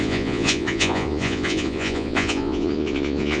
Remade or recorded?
remade